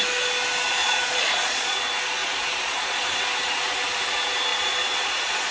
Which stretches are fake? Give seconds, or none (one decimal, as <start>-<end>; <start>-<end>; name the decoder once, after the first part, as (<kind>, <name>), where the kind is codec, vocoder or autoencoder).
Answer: 0.8-1.8 (vocoder, Vocos); 2.2-3.2; 4.5-5.5